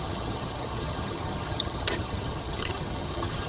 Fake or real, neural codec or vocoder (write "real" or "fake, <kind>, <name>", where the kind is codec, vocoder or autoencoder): fake, vocoder, HiFi-GAN